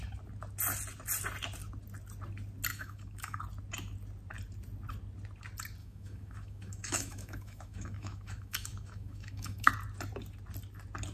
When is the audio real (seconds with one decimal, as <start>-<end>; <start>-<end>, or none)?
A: 0.0-2.7; 3.4-5.8; 9.7-11.1